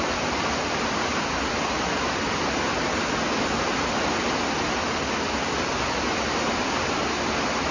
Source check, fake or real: real